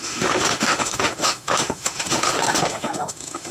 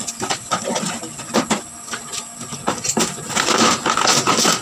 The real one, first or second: second